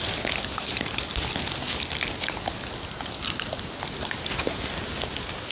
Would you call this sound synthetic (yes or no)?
no